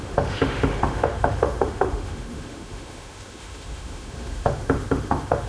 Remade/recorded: remade